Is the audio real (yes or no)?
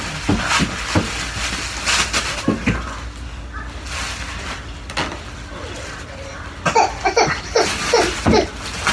yes